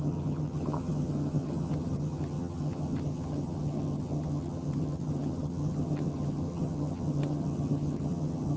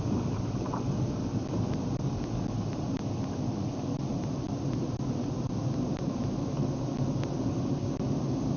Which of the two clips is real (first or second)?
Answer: second